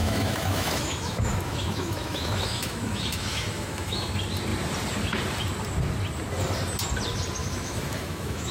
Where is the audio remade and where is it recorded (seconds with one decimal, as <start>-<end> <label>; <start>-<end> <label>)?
0.0-4.1 remade; 4.1-7.4 recorded; 7.4-8.5 remade